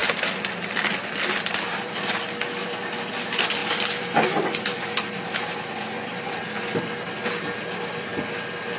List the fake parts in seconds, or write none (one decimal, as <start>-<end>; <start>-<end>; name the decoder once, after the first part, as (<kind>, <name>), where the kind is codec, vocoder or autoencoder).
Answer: 0.0-2.2 (vocoder, BigVGAN v2); 3.6-6.6